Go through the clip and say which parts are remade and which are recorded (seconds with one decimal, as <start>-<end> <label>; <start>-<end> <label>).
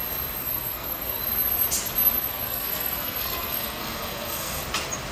0.0-0.4 recorded; 0.4-1.2 remade; 1.2-2.3 recorded; 2.3-4.6 remade; 4.6-5.1 recorded